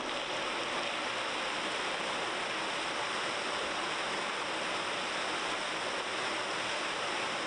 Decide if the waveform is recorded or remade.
recorded